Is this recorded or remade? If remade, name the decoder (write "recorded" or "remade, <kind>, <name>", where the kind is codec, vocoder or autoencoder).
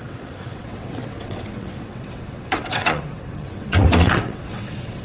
remade, vocoder, WaveNeXt